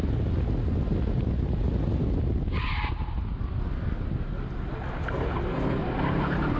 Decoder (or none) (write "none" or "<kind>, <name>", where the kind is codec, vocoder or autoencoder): none